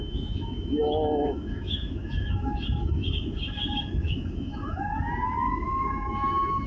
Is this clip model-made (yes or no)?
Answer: yes